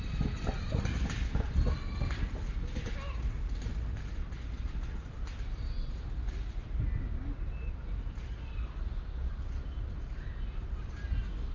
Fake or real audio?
real